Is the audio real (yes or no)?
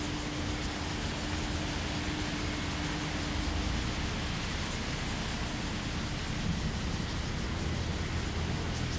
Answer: yes